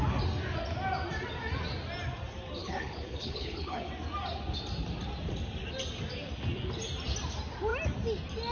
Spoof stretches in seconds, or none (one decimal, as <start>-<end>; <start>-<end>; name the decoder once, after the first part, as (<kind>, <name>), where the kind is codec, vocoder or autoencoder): 2.6-3.9 (codec, HILCodec)